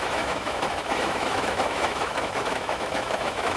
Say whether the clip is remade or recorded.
remade